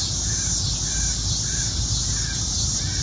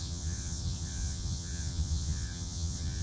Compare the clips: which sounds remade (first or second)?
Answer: second